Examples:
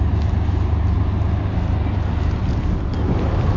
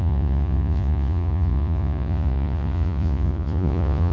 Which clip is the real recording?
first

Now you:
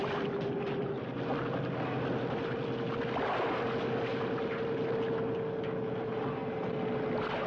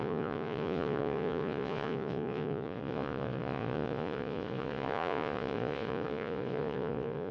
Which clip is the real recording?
first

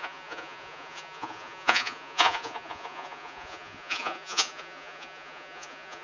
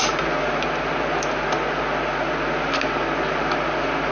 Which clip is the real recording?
second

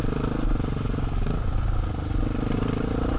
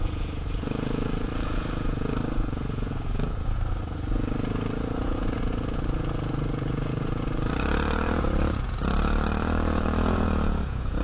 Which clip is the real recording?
first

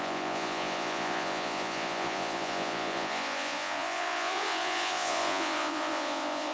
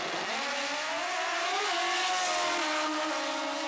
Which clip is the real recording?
second